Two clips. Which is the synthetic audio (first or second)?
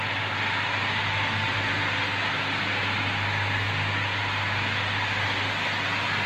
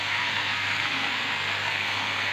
second